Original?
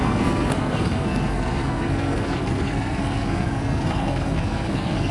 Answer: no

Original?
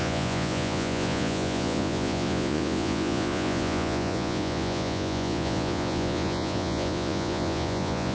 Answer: no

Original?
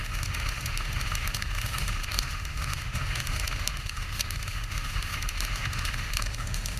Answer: no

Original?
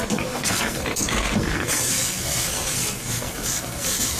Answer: no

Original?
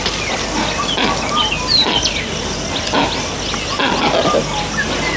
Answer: yes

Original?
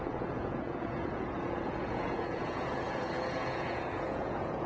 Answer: no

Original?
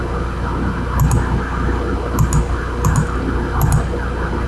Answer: yes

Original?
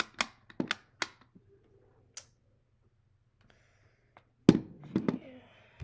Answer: yes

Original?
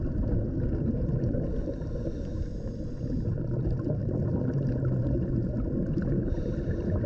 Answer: yes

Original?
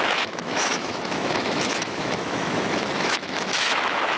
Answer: no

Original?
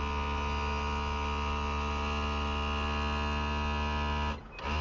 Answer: yes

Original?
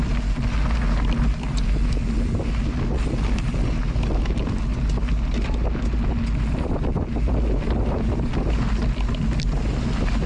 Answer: yes